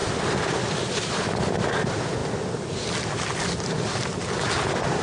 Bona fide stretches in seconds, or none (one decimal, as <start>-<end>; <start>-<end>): 1.1-2.2; 4.2-5.0